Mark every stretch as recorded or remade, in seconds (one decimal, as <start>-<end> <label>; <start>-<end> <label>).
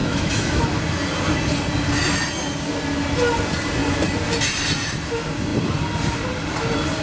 0.0-0.6 remade; 0.6-7.0 recorded